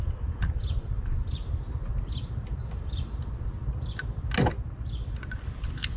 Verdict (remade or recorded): recorded